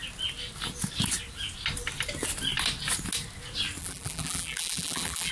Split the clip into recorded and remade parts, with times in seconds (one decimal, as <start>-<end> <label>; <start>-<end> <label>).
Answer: 0.0-3.8 recorded; 3.8-5.3 remade